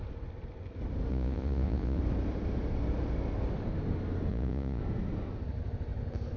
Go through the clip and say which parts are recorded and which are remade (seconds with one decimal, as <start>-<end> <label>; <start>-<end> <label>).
0.0-1.1 recorded; 1.1-2.0 remade; 2.0-4.3 recorded; 4.3-4.8 remade; 4.8-6.4 recorded